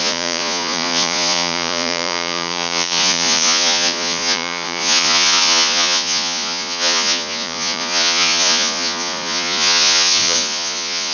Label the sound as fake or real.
fake